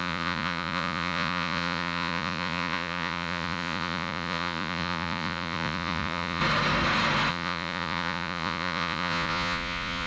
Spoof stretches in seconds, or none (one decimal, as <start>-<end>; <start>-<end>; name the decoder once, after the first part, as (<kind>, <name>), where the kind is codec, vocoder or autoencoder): 0.0-6.4 (vocoder, Vocos); 7.3-10.1